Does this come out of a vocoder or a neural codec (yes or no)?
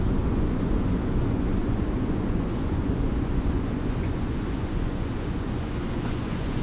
yes